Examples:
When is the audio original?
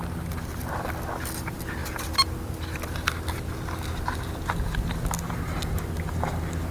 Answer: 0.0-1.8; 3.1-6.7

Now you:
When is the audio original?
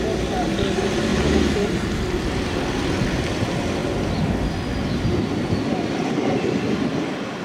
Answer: 0.0-1.1; 1.9-7.4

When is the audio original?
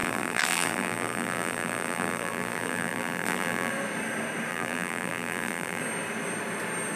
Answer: 3.7-4.5; 5.8-7.0